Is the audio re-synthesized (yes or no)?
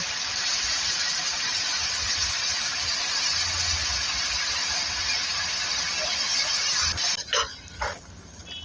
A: no